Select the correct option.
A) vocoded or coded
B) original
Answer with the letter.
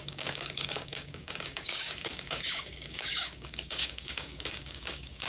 A